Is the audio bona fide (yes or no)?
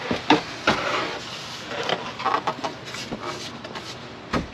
yes